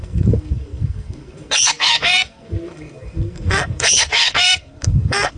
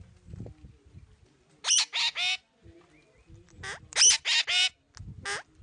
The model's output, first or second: first